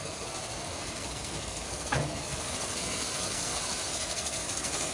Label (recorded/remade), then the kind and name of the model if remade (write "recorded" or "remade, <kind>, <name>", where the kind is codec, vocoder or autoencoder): remade, codec, SNAC